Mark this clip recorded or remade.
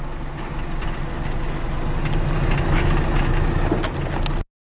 recorded